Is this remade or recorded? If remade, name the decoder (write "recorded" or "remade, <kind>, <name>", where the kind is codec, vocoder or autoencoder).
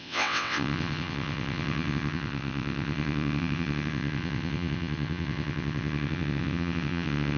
remade, vocoder, WaveNeXt